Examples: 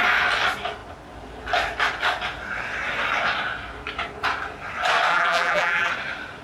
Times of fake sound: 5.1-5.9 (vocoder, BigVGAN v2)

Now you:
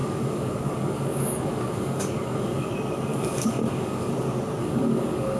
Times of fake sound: 0.0-2.7 (codec, DAC); 3.1-4.1; 4.6-5.4

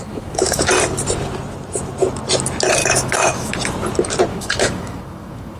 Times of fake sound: 0.0-0.7 (autoencoder, DAC-VAE); 2.8-3.5; 4.3-5.6

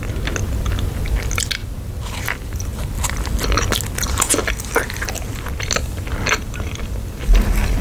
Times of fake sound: none

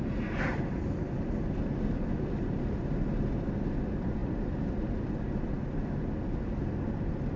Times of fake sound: none